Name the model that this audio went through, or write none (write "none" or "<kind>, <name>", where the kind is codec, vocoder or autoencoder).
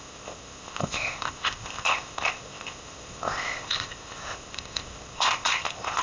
codec, ZipCodec